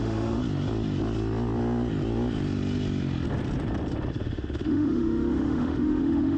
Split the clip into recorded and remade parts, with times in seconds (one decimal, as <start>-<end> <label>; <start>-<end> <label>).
0.0-0.4 remade; 0.4-4.2 recorded; 4.2-6.4 remade